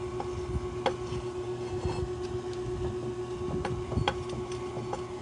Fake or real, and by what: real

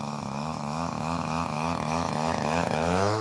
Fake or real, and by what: fake, autoencoder, DAC-VAE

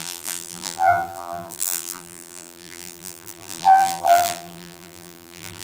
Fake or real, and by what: fake, vocoder, BigVGAN v2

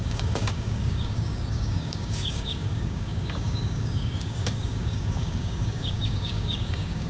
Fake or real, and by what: fake, codec, DAC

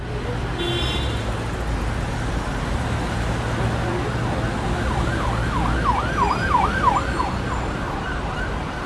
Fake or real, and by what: real